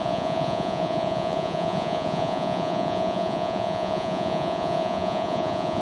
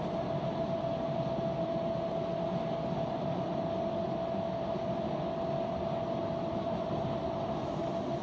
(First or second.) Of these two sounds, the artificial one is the first